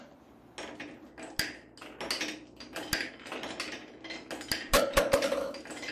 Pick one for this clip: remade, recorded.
recorded